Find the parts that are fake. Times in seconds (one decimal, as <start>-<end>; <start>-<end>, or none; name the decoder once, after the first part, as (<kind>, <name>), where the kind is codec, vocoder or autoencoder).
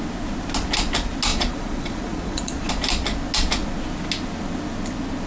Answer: 1.3-2.7 (vocoder, Vocos)